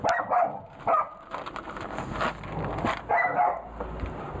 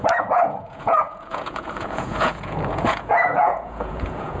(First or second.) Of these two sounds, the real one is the first